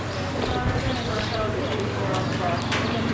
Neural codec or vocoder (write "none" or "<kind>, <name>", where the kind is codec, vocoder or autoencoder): vocoder, BigVGAN v2